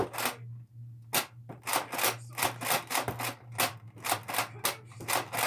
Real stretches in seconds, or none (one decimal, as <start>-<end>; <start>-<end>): 0.0-5.5